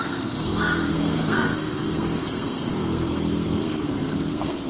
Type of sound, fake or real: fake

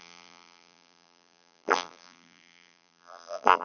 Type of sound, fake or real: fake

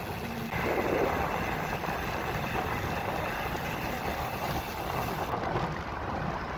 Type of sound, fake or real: real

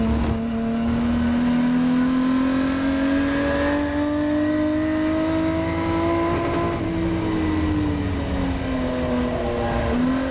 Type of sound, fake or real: real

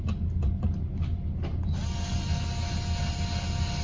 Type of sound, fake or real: real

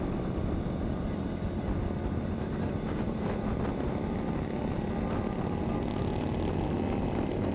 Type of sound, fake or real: real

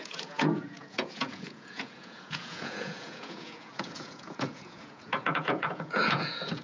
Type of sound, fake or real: fake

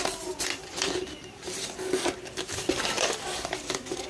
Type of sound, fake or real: fake